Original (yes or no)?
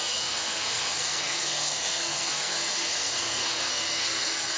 no